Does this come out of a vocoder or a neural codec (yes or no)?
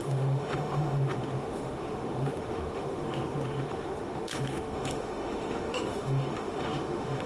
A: yes